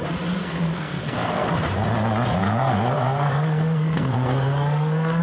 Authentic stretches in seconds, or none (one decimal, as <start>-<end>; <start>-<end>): 0.0-0.4; 1.5-2.4